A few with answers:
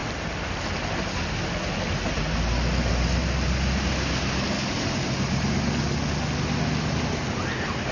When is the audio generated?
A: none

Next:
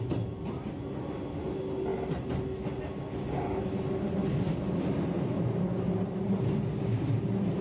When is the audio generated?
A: none

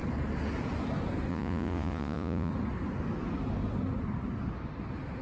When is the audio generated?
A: 1.3-2.5 (vocoder, Vocos)

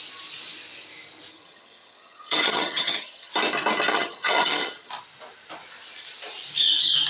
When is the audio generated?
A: 1.3-3.3 (vocoder, HiFi-GAN); 3.9-4.9